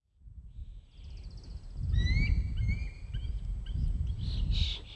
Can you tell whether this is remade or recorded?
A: recorded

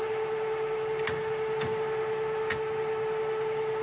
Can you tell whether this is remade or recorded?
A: recorded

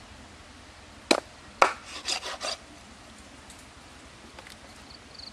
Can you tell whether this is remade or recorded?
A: recorded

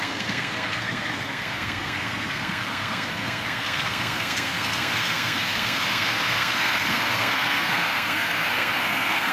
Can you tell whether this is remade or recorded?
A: remade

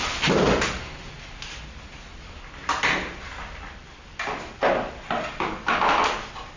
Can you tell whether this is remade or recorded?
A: recorded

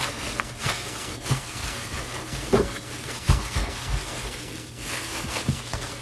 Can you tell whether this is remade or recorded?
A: remade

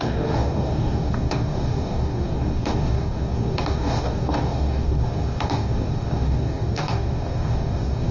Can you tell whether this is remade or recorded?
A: remade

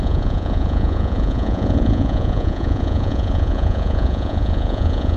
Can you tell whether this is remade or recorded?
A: remade